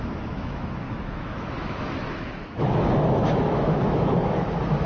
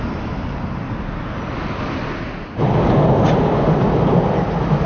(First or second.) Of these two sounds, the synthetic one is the first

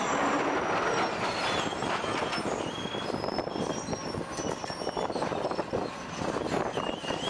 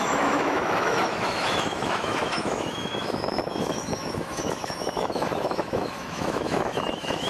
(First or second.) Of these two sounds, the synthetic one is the second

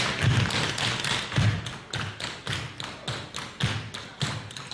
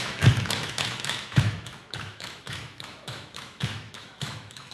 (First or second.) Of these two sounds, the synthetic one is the second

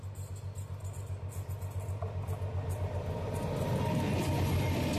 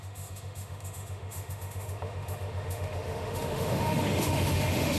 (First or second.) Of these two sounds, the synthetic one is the second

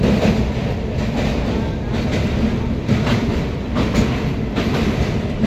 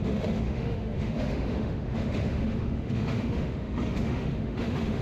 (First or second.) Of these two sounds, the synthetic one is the second